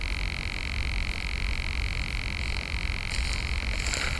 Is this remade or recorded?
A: recorded